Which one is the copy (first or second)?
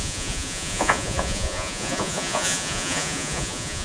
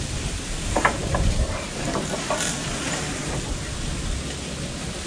first